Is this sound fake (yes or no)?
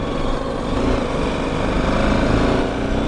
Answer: no